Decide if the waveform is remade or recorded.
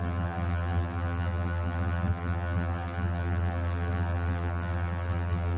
remade